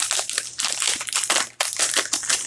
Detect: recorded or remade recorded